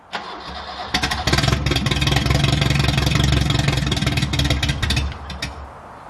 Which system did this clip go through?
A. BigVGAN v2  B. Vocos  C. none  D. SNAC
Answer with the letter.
C